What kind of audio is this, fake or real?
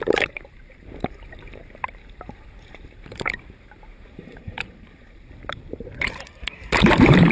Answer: fake